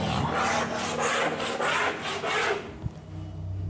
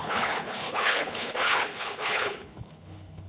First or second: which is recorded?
first